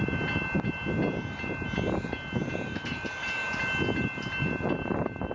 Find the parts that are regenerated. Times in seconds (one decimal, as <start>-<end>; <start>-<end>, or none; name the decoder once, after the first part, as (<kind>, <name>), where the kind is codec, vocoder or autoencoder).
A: none